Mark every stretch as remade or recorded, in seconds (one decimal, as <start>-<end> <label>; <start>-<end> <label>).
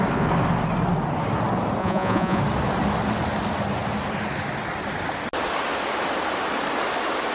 0.0-1.8 recorded; 1.8-2.4 remade; 2.4-7.3 recorded